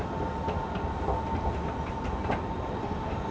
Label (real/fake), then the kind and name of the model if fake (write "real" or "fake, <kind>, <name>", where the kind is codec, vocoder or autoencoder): real